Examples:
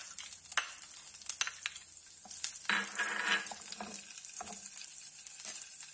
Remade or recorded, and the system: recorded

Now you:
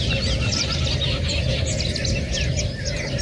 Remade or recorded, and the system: recorded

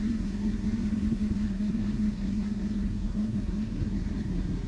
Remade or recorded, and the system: remade, codec, SNAC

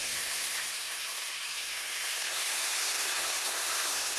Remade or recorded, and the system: remade, codec, SNAC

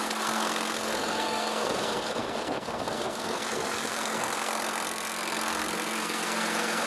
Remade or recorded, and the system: remade, codec, SNAC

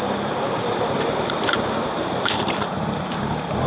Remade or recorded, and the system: recorded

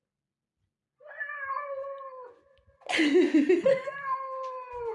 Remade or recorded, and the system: recorded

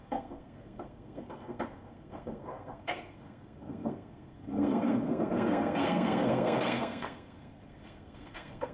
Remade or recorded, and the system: remade, codec, SNAC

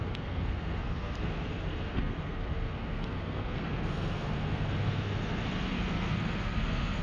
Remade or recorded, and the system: remade, codec, SNAC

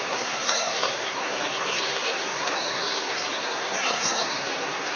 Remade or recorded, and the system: remade, codec, SNAC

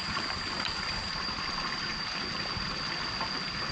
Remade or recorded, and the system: recorded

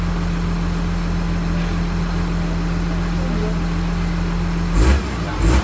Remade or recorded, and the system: recorded